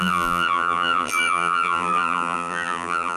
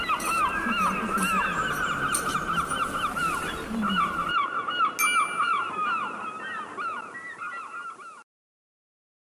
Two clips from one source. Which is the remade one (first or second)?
first